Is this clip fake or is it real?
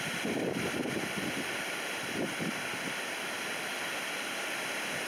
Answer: fake